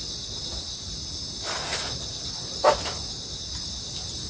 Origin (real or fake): real